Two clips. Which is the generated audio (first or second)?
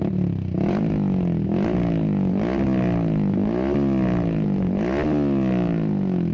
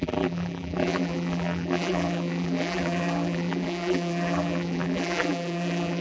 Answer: second